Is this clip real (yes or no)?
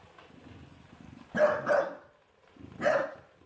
yes